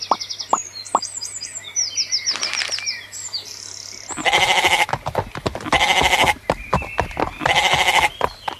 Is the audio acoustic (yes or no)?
yes